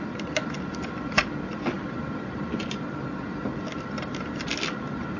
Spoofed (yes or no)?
no